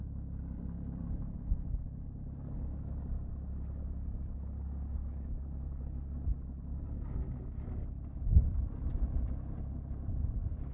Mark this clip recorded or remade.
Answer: recorded